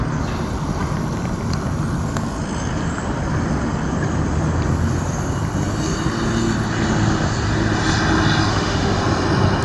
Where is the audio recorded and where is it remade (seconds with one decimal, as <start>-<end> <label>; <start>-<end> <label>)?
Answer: 0.0-8.5 recorded; 8.5-9.0 remade; 9.0-9.6 recorded